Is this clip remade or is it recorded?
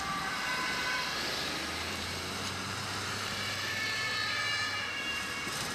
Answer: remade